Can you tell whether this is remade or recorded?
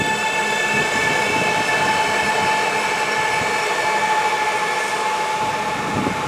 recorded